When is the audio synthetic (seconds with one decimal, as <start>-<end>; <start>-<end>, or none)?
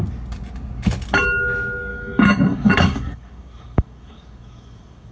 1.9-5.1